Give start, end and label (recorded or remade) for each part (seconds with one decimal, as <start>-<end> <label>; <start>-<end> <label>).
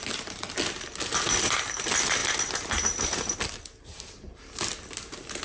0.0-5.4 recorded